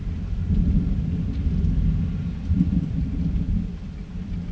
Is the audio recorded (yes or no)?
yes